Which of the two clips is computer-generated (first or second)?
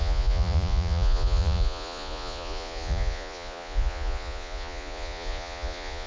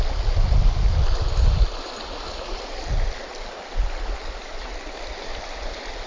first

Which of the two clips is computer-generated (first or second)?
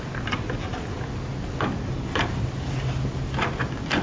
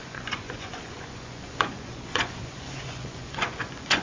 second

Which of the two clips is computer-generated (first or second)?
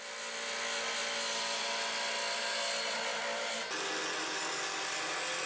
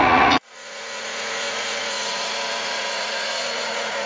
second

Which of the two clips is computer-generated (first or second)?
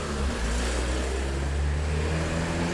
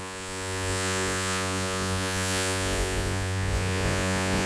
second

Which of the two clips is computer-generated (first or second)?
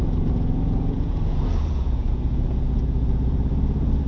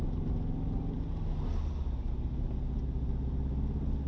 first